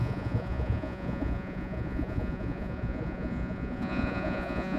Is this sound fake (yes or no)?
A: yes